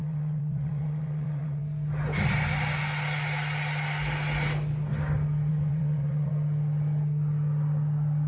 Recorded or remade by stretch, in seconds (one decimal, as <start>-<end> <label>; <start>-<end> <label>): 0.0-1.6 remade; 1.6-5.5 recorded; 5.5-6.3 remade; 6.3-8.3 recorded